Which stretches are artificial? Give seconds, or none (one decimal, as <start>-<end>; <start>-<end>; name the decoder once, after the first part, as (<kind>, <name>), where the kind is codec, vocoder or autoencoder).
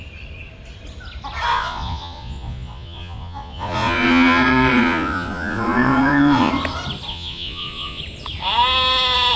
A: 1.5-6.5 (vocoder, Vocos); 7.1-8.0